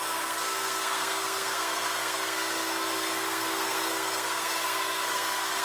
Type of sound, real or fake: fake